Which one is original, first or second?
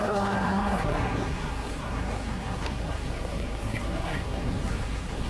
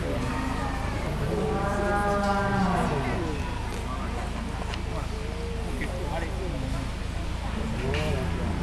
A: second